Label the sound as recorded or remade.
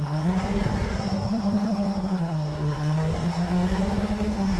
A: remade